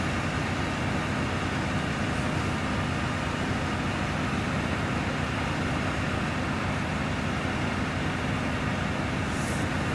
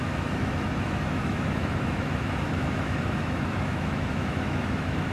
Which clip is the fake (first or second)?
second